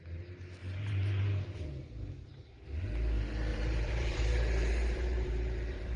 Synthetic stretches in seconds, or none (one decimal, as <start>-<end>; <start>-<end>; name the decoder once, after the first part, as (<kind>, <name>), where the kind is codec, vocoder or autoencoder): 0.6-1.2 (vocoder, BigVGAN v2); 3.5-6.0